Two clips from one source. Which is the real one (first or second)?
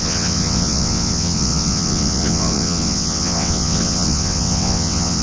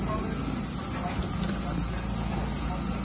second